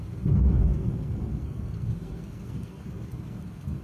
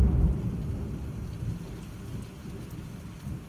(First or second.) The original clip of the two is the second